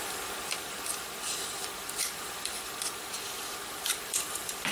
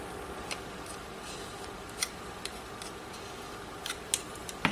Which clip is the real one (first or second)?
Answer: second